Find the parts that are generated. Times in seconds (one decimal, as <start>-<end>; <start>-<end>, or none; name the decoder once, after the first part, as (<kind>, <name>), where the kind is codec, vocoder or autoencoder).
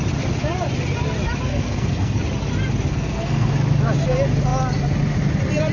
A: 1.5-2.2 (codec, SNAC); 2.9-3.5